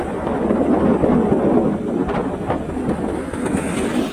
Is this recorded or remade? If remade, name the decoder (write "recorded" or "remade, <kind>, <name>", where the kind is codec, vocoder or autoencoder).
recorded